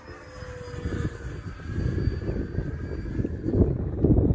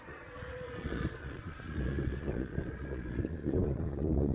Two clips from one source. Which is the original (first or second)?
first